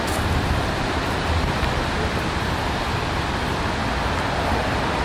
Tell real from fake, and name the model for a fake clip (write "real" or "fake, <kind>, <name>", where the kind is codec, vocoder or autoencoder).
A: real